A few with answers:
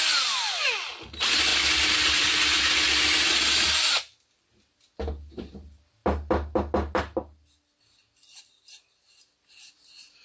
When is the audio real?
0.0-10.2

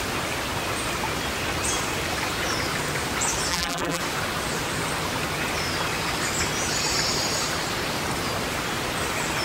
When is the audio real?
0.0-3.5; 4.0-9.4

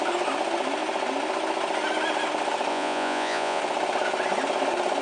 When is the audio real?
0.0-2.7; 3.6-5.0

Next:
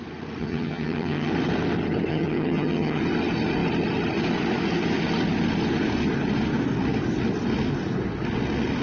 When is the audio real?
0.0-0.4; 1.3-2.1; 3.0-8.8

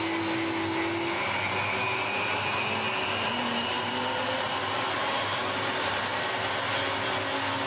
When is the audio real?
0.0-3.0; 5.9-7.7

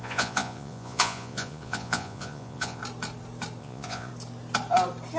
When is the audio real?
2.8-3.6; 4.1-5.2

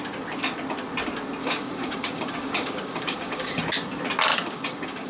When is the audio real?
0.0-1.4; 3.6-4.3

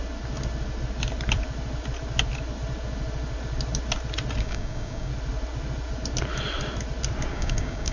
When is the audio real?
0.0-4.4; 5.1-7.3